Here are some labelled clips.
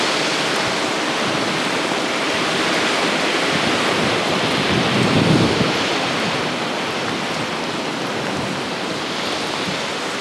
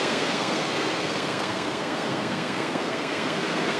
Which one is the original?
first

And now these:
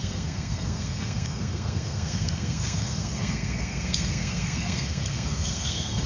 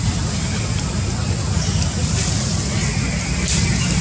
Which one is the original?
second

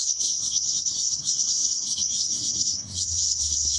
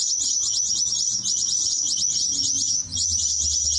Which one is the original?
second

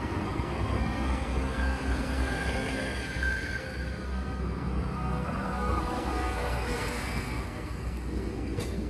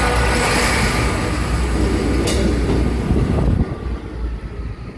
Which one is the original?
second